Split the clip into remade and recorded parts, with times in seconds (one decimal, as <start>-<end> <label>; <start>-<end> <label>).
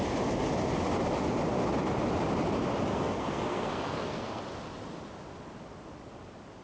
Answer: 0.0-2.9 recorded; 2.9-4.4 remade; 4.4-6.6 recorded